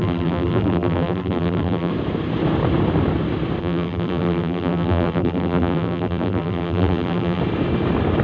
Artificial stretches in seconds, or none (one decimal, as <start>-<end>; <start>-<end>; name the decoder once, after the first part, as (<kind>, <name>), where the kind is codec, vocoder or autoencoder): 0.0-1.9 (vocoder, BigVGAN v2); 3.6-7.4